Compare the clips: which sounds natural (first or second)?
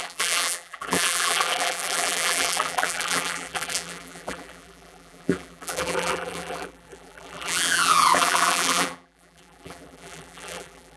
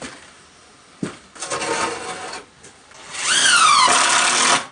second